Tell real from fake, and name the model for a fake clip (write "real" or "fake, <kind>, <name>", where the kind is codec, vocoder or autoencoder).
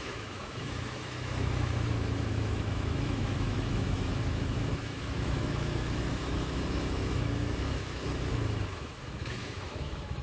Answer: fake, autoencoder, DAC-VAE